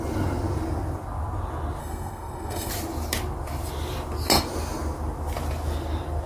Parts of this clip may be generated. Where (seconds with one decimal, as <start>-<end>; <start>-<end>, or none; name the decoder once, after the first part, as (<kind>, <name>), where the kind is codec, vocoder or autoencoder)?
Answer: 1.8-2.7 (codec, SNAC)